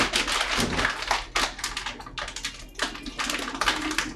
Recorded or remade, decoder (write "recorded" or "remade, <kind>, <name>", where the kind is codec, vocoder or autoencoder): recorded